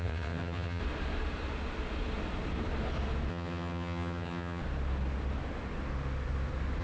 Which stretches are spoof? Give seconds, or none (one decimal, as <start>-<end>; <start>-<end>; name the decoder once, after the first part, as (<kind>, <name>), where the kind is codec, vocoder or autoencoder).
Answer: 0.0-0.8 (vocoder, HiFi-GAN); 3.3-4.6